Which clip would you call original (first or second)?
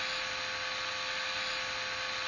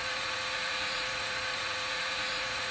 first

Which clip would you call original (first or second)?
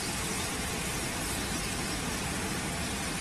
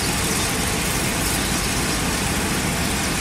second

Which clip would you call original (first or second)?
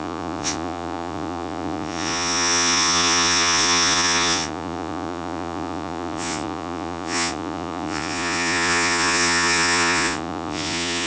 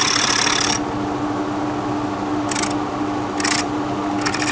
second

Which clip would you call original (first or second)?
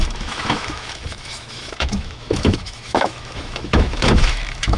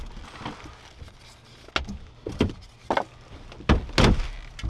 second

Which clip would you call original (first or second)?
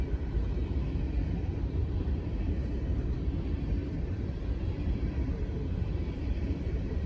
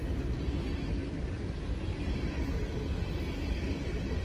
second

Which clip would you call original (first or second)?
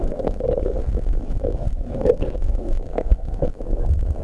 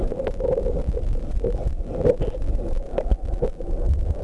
second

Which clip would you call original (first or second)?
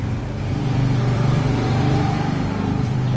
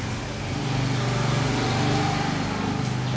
second